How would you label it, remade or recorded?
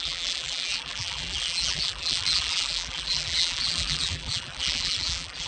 remade